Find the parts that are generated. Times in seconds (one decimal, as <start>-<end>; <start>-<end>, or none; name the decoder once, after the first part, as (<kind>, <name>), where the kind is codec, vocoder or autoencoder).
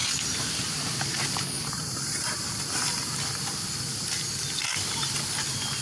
none